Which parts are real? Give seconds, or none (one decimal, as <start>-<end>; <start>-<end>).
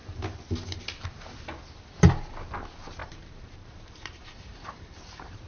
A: 0.0-3.0